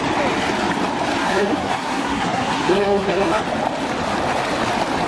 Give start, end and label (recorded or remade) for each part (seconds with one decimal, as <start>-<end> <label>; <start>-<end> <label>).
0.0-1.2 recorded; 1.2-3.4 remade; 3.4-5.1 recorded